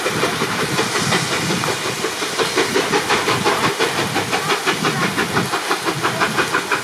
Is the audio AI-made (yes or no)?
no